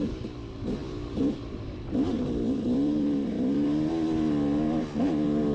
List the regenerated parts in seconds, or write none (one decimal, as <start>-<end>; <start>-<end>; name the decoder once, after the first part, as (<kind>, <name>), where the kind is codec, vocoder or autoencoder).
0.8-3.9 (vocoder, BigVGAN v2)